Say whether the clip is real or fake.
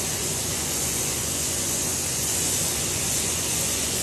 fake